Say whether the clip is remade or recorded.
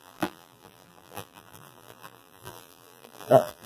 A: remade